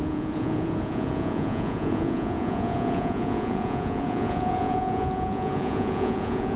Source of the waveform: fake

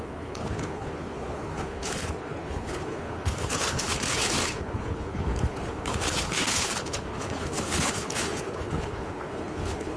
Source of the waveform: fake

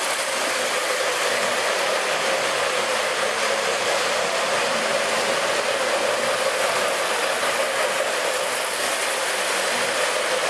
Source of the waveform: real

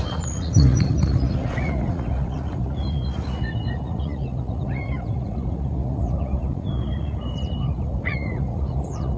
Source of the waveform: fake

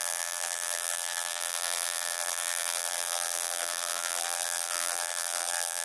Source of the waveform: fake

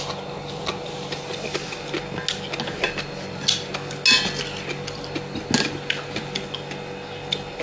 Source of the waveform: real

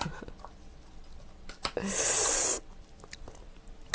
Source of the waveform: real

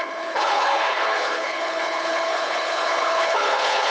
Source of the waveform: fake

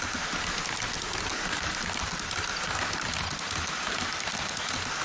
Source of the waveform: real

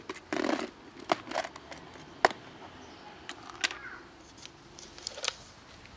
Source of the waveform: real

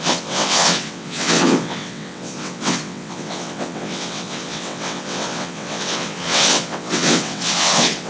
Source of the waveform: fake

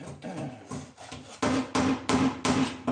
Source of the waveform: real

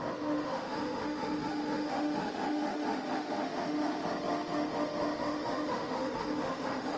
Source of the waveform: fake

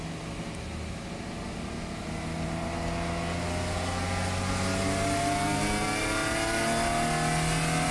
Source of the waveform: real